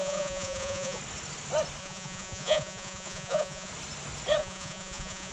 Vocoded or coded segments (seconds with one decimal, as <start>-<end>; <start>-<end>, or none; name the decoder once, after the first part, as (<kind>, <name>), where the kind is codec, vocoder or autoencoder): 0.0-1.0 (vocoder, Vocos); 1.8-3.7; 4.4-5.3